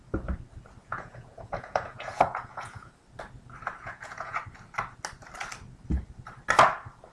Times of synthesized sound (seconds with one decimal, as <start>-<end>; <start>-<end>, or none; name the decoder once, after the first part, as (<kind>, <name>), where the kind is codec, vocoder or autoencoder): 0.8-2.9 (vocoder, Vocos); 3.8-4.4